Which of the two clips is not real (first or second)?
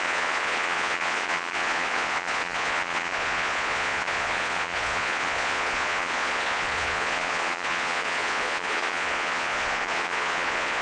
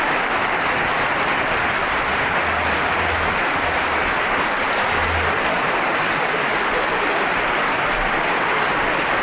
first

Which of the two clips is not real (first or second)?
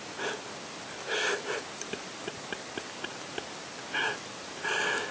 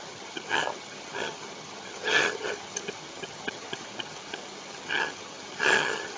second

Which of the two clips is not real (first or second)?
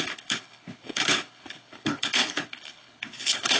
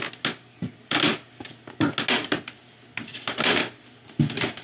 first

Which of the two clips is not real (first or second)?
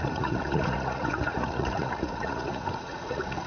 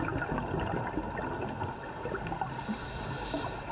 first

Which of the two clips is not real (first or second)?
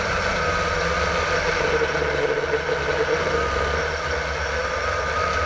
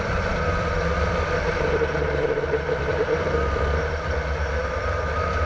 second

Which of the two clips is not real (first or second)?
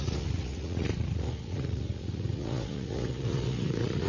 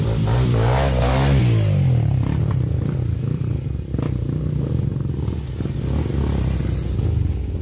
first